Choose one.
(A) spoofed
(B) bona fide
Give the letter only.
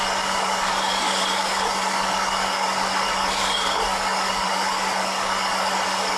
A